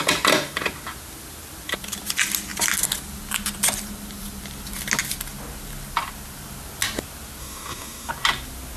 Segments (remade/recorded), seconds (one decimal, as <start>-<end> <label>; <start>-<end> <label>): 0.0-7.4 recorded; 7.4-8.1 remade; 8.1-8.8 recorded